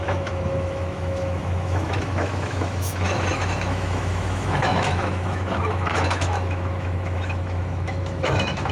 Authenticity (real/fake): fake